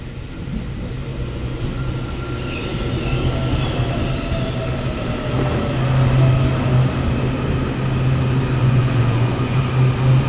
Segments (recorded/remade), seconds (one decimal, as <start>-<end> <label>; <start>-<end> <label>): 0.0-1.1 recorded; 1.1-1.9 remade; 1.9-8.6 recorded; 8.6-9.6 remade; 9.6-10.3 recorded